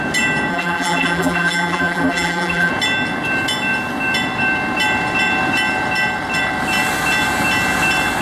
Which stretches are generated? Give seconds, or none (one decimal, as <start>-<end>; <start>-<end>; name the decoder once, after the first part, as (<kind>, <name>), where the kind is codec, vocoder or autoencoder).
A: 0.5-2.7 (vocoder, BigVGAN v2)